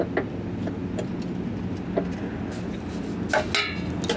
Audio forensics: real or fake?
real